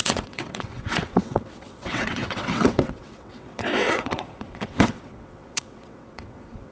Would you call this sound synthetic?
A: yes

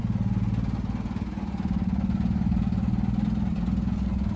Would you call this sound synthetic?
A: no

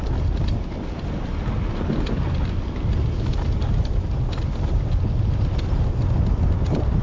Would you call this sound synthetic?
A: no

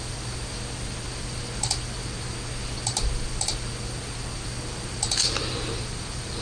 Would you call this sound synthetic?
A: no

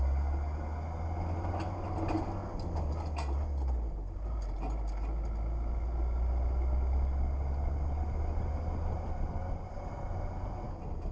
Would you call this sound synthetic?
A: no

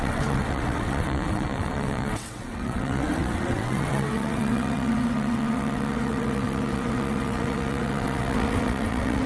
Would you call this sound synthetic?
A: yes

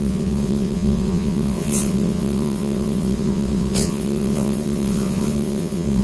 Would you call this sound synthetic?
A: yes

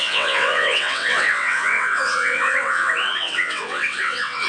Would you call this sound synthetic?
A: yes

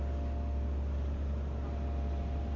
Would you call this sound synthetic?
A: no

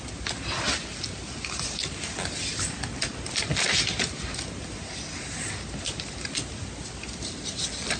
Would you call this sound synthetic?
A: no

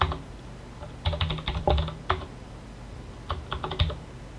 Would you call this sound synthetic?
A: no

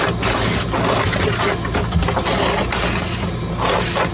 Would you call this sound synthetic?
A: no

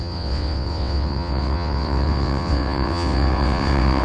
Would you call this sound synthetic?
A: yes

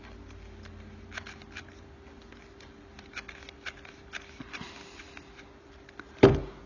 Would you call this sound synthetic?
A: no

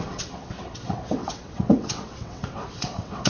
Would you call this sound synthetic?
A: yes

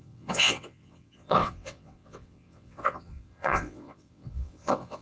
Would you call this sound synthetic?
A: yes